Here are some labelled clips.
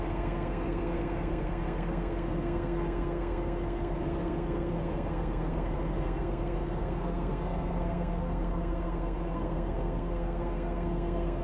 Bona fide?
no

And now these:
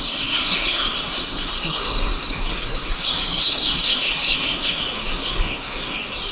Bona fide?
no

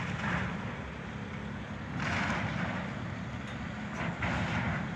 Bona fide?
yes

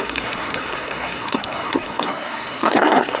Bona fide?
no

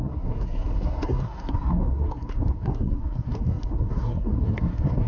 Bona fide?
no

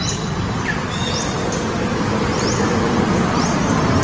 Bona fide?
yes